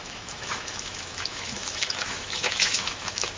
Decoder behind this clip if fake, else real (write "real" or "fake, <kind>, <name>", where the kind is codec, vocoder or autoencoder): fake, autoencoder, DAC-VAE